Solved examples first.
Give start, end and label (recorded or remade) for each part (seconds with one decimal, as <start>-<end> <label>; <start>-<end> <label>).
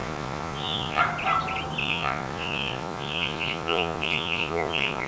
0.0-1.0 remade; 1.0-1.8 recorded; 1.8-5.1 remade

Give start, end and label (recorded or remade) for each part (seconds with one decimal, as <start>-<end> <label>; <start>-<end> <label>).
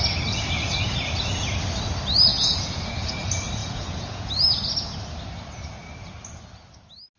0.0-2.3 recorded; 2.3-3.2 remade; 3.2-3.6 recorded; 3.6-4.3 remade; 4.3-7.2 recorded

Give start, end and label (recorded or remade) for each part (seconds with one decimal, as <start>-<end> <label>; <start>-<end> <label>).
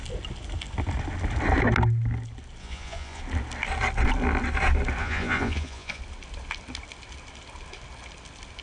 0.0-2.6 recorded; 2.6-3.2 remade; 3.2-5.0 recorded; 5.0-6.0 remade; 6.0-8.6 recorded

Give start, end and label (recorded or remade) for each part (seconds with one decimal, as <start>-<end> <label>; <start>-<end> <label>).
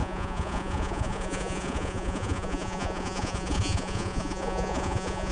0.0-5.3 remade